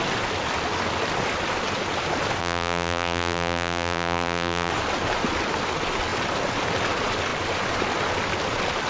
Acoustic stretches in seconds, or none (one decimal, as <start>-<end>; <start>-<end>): 0.0-2.4; 4.7-8.9